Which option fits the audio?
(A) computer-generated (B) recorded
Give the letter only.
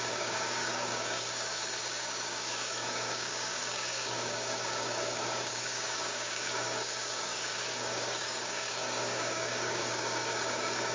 A